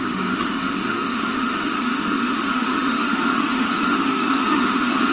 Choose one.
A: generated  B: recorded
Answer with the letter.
A